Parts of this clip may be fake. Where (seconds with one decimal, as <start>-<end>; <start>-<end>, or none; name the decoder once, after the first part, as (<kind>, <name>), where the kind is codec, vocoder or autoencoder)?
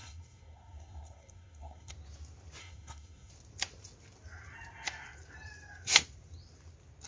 0.0-1.9 (codec, SNAC); 2.6-3.3